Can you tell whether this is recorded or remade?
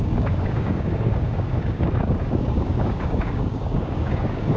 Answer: remade